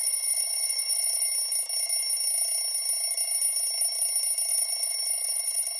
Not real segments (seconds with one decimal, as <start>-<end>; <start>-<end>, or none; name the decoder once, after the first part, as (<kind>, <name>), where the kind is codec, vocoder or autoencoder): 0.0-1.2 (vocoder, Vocos); 4.5-5.8